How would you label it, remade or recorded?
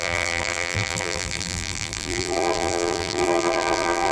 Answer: remade